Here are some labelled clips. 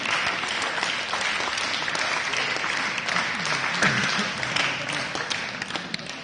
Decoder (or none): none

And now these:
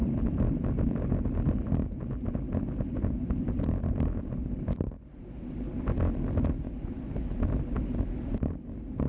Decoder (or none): none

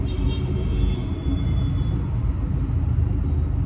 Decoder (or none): none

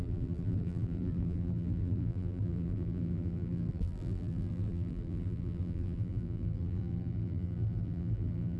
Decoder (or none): vocoder, BigVGAN v2